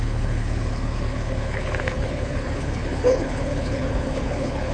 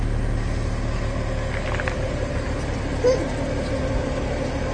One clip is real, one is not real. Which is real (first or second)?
second